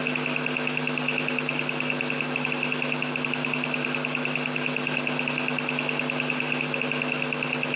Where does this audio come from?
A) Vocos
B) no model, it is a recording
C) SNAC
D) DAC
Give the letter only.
B